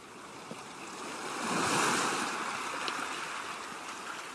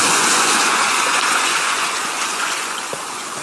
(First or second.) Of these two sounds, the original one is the first